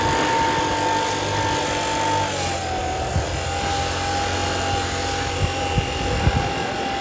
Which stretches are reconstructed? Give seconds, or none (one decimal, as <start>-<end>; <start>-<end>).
none